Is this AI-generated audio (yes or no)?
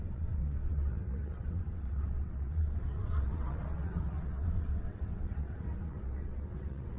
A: yes